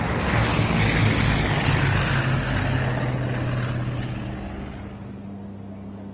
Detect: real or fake real